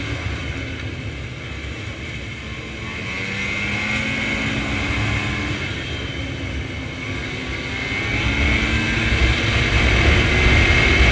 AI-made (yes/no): no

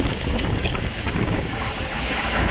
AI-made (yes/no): yes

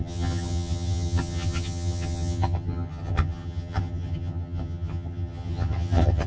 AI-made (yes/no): yes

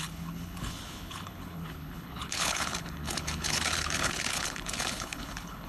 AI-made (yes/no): yes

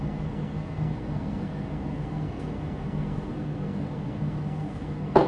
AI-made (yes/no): yes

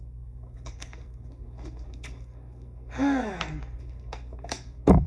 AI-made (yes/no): yes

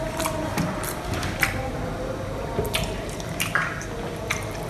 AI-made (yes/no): yes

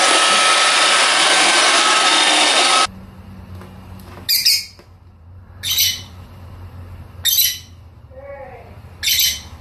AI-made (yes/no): no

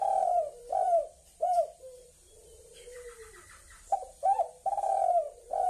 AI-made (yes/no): yes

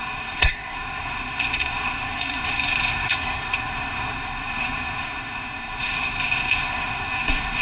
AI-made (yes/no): yes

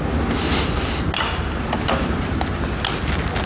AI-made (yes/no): no